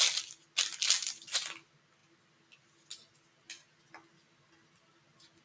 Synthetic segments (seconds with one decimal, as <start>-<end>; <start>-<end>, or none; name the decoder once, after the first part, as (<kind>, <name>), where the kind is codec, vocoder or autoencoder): none